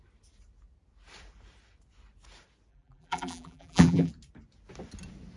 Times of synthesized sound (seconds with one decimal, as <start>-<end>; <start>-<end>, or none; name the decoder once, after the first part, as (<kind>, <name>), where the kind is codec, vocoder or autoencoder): 2.7-4.1 (vocoder, BigVGAN v2)